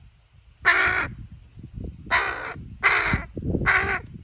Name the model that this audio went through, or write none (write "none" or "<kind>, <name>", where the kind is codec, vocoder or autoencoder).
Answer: none